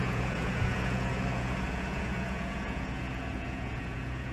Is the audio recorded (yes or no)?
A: no